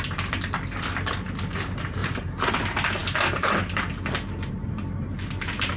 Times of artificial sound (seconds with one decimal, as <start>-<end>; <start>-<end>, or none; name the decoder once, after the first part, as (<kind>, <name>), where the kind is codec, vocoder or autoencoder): 2.0-2.5 (vocoder, BigVGAN v2)